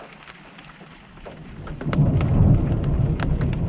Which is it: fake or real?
fake